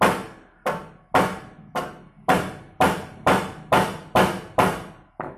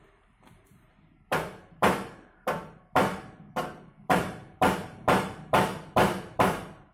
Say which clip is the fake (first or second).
second